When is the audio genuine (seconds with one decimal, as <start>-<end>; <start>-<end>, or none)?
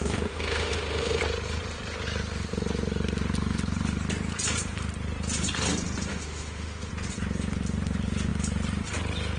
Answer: 1.2-6.1; 6.9-9.4